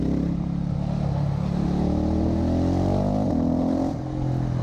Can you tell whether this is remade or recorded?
recorded